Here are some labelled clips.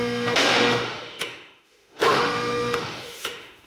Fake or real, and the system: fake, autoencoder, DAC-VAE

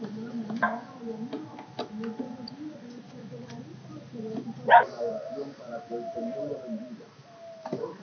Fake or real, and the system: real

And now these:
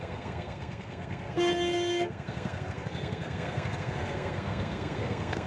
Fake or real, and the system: fake, codec, SNAC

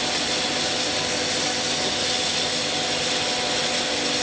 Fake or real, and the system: real